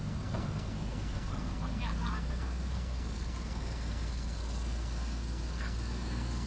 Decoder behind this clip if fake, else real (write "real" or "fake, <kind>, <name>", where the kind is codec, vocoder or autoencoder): fake, codec, SNAC